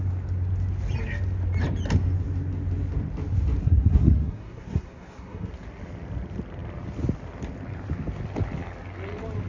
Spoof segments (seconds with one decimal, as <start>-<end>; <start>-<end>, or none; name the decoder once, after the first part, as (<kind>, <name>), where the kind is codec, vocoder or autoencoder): 3.6-5.5 (codec, SNAC)